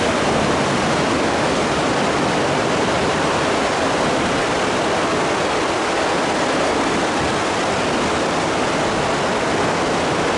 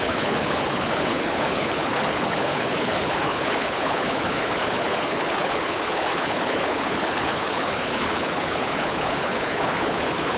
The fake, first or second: second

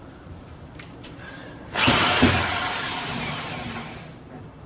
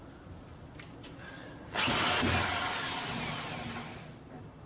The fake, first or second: first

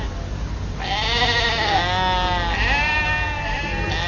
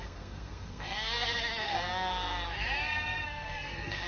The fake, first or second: second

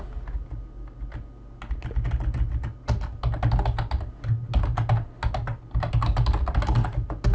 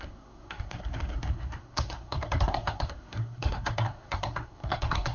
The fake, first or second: second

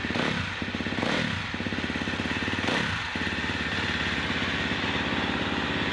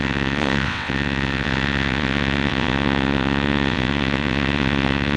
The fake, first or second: second